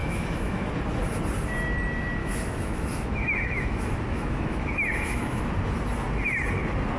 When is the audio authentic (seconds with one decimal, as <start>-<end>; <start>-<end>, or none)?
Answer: 0.7-2.2; 5.4-7.0